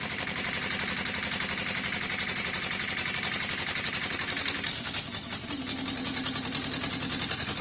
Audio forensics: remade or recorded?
recorded